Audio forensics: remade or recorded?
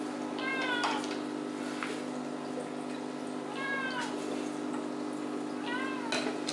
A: recorded